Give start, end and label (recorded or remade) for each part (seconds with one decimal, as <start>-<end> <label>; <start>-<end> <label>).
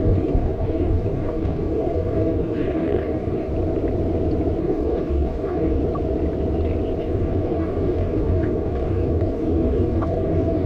0.0-3.5 remade; 3.5-4.6 recorded; 4.6-5.8 remade; 5.8-7.0 recorded; 7.0-10.7 remade